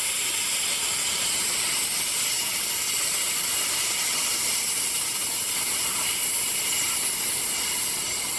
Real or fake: real